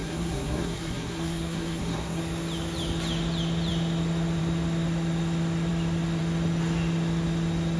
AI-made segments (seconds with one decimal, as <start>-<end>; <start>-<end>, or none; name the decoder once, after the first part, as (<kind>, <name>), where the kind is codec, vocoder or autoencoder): 0.0-2.2 (codec, SNAC)